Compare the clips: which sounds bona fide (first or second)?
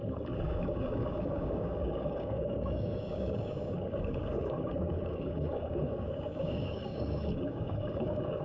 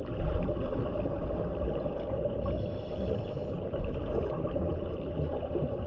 second